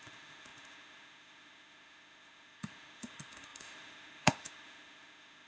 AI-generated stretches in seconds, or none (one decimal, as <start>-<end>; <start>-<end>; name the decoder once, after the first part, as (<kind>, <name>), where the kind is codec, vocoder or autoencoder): 0.0-5.5 (autoencoder, DAC-VAE)